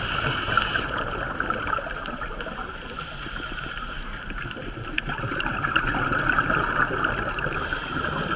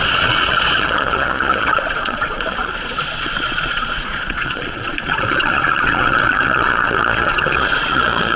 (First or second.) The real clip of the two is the first